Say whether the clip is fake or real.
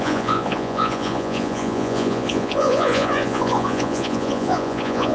fake